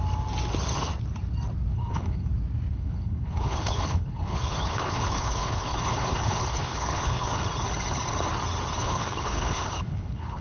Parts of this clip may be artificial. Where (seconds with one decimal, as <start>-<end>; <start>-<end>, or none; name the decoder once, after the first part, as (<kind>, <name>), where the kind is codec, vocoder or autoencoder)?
1.7-2.3 (codec, HILCodec); 2.7-7.4; 8.8-10.4